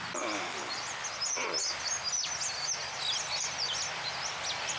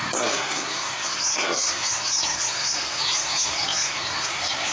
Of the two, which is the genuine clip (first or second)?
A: first